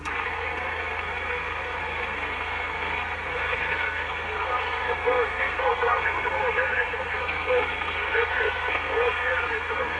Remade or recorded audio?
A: remade